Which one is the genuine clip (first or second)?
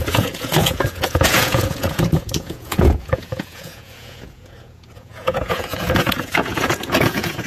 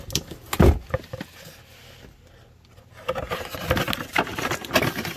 second